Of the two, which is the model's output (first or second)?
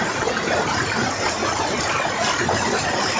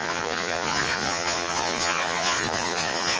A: second